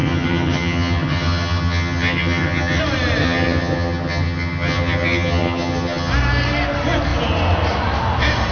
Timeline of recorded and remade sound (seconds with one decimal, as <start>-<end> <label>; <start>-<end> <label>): 0.0-2.8 remade; 2.8-3.2 recorded; 3.2-6.1 remade; 6.1-8.5 recorded